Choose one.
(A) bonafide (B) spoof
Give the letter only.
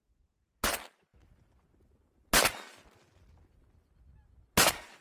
A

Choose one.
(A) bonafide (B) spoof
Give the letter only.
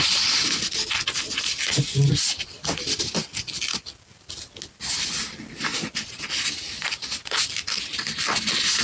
A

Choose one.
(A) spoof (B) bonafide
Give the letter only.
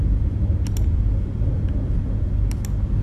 B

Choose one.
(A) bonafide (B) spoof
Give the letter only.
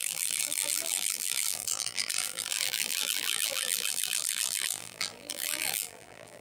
B